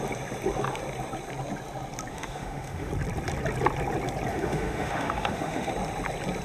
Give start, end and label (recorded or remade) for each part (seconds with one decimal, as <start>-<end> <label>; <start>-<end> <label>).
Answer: 0.0-2.1 recorded; 2.1-2.9 remade; 2.9-4.3 recorded; 4.3-5.7 remade; 5.7-6.4 recorded